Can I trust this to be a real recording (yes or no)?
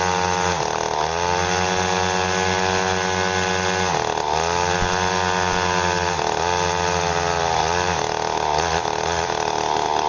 yes